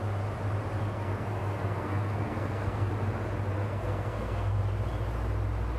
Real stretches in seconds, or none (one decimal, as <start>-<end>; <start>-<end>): 0.0-0.8; 2.9-3.6; 4.6-5.8